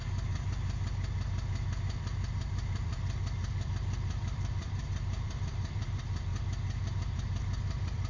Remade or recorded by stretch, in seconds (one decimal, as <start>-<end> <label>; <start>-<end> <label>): 0.0-6.3 remade; 6.3-6.9 recorded; 6.9-8.1 remade